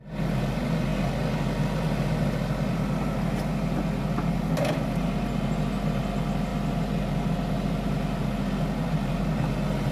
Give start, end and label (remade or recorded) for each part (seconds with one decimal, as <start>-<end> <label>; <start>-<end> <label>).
0.0-9.9 recorded